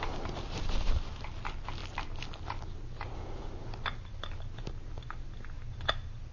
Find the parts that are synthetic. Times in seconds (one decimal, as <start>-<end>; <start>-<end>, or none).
none

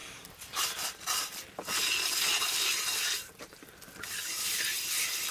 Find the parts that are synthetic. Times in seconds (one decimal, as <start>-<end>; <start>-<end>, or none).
none

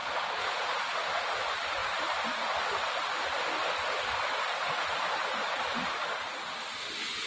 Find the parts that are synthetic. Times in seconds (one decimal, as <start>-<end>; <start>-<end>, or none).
0.0-1.0

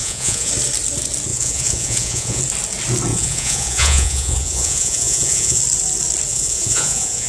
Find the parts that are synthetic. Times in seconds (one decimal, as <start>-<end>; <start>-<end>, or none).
0.0-0.5; 1.3-2.4; 3.1-5.6; 6.3-7.3